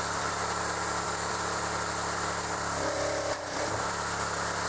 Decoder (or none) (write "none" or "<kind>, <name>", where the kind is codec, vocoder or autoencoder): vocoder, BigVGAN v2